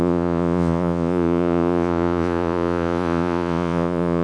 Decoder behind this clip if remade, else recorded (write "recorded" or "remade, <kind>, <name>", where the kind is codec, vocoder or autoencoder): remade, vocoder, Vocos